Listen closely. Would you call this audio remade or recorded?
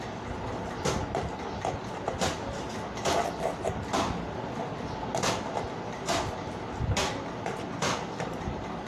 recorded